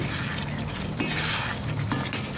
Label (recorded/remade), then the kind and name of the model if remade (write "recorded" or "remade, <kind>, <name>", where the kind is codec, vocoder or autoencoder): recorded